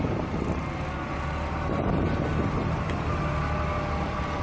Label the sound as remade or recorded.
recorded